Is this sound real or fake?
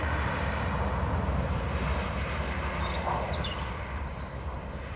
real